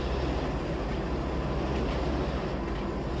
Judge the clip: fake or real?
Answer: real